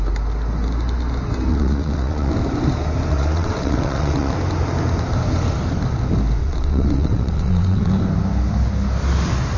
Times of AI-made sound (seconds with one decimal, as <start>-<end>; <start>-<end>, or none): 1.5-2.3; 3.1-4.3; 6.4-7.9